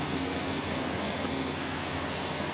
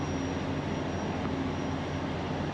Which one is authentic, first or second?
second